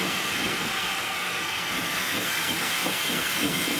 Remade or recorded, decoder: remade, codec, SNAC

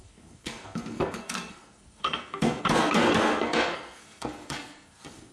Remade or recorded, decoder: remade, codec, SNAC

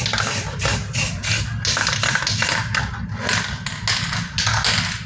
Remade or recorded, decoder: recorded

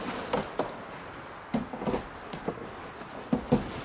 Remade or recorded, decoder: recorded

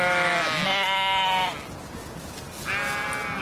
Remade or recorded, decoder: recorded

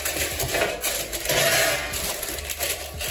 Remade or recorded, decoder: recorded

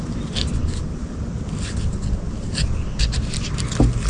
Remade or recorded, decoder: recorded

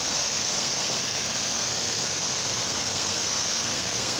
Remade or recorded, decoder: remade, codec, SNAC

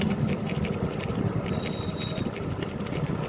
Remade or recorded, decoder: recorded